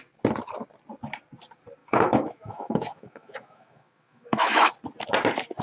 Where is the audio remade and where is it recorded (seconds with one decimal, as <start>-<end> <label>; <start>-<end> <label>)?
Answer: 0.0-1.8 recorded; 1.8-4.7 remade; 4.7-5.6 recorded